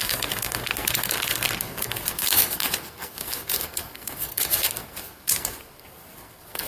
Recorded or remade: remade